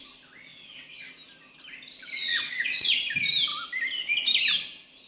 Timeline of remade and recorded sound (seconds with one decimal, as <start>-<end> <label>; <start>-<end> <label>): 0.0-0.5 recorded; 0.5-1.1 remade; 1.1-2.2 recorded; 2.2-2.9 remade; 2.9-5.1 recorded